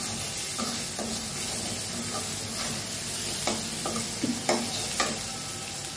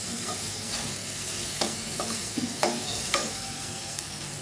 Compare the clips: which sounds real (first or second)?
first